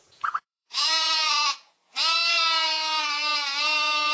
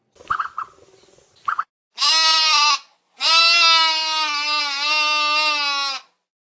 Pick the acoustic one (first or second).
second